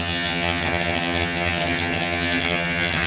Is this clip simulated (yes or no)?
yes